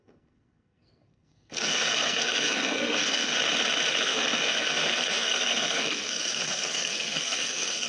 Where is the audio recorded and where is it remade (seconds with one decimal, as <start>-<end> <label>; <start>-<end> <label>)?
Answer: 0.0-3.3 remade; 3.3-4.0 recorded; 4.0-7.9 remade